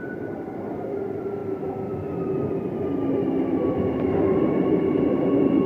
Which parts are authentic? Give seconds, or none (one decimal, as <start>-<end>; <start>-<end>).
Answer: 0.0-5.7